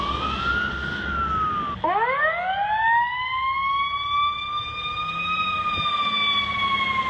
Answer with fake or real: real